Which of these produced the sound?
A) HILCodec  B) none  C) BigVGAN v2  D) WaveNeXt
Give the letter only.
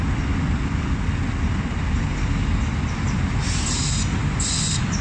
B